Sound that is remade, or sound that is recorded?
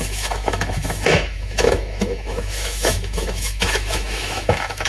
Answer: remade